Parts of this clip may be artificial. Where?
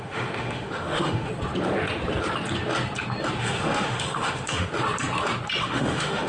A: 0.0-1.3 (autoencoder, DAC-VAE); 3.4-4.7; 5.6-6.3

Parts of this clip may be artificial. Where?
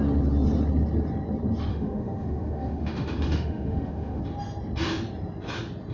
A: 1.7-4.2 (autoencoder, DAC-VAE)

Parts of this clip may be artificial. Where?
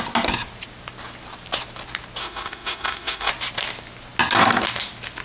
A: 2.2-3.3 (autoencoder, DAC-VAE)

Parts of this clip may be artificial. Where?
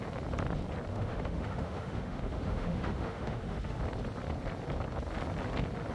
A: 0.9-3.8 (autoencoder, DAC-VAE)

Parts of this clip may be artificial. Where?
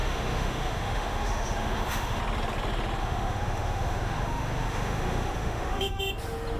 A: 0.0-2.2 (autoencoder, DAC-VAE); 3.0-6.0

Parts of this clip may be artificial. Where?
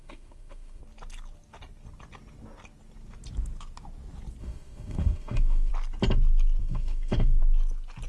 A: 0.0-0.8 (autoencoder, DAC-VAE); 4.4-5.7; 6.6-7.4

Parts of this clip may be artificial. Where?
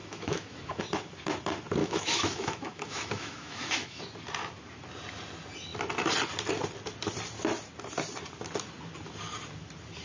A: 0.0-0.8 (autoencoder, DAC-VAE); 1.8-4.0